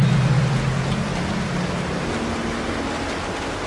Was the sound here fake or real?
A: real